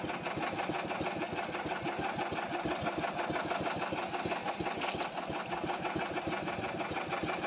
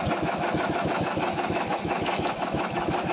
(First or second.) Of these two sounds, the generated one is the second